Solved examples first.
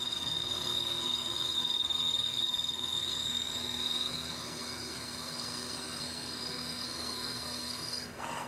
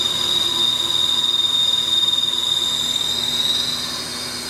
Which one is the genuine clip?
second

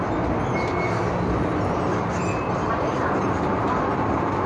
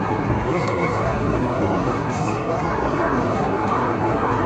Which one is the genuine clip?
first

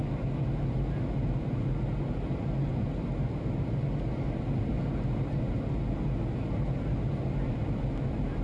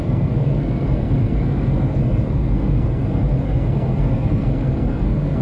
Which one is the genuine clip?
first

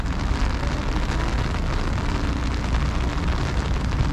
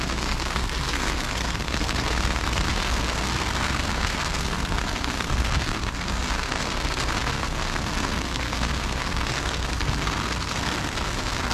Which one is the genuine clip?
first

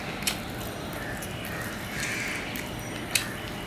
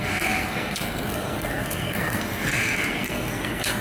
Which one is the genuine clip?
first